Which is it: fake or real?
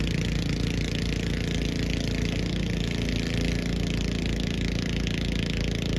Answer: real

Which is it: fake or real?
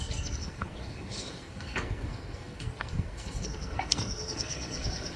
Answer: fake